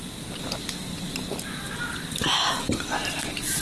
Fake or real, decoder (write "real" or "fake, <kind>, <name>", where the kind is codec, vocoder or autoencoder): real